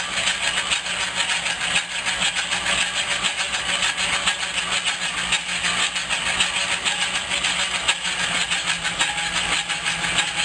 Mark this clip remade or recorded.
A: recorded